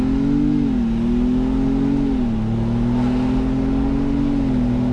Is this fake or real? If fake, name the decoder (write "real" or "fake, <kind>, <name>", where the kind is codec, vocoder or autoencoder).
real